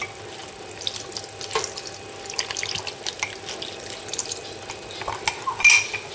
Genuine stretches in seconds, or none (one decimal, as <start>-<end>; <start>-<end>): 0.0-6.1